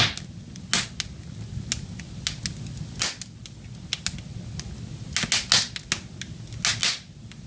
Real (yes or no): yes